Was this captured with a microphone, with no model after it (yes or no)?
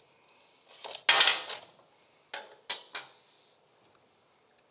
yes